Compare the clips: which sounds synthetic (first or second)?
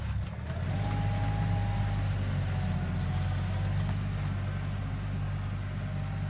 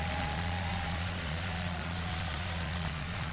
second